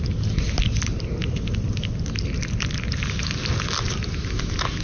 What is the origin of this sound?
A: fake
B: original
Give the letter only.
B